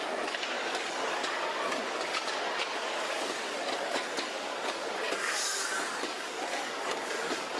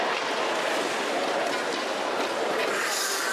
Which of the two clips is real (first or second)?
second